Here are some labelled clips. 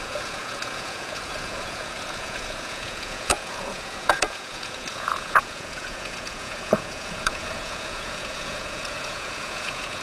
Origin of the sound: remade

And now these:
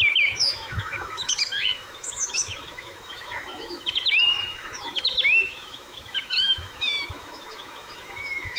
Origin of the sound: remade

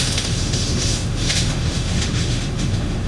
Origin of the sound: remade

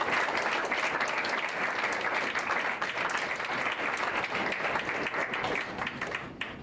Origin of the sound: recorded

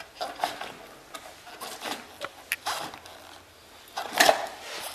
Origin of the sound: recorded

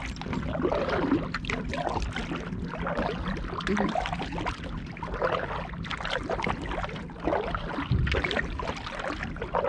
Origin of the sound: recorded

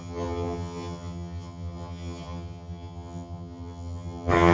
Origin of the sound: remade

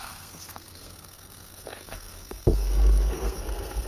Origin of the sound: remade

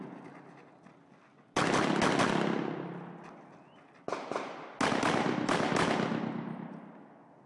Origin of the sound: recorded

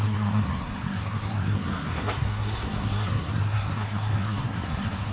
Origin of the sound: remade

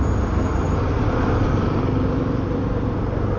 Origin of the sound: recorded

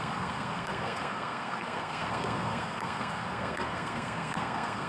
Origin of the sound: remade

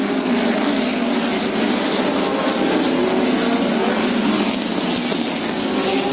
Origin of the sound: recorded